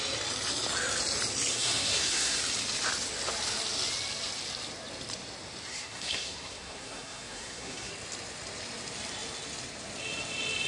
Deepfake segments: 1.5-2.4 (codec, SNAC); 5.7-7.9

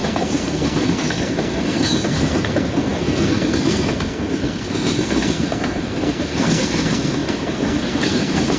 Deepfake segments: 0.0-8.6 (codec, SNAC)

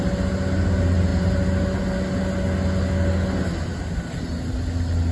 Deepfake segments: none

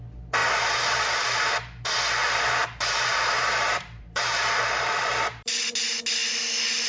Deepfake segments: 0.4-1.5 (vocoder, BigVGAN v2); 2.2-5.6

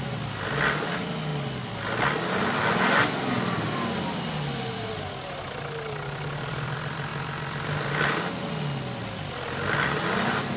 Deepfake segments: none

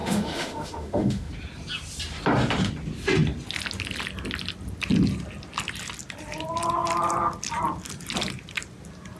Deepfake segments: 0.0-1.3 (autoencoder, DAC-VAE)